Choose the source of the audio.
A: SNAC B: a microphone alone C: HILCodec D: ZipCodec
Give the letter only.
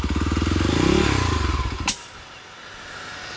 B